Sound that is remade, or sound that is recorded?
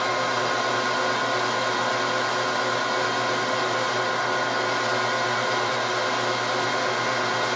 recorded